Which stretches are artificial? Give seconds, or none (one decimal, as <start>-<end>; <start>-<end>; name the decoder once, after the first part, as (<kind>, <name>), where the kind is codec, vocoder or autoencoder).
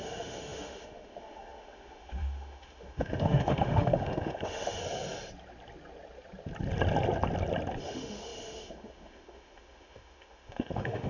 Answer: 0.0-4.8 (autoencoder, DAC-VAE); 7.8-11.1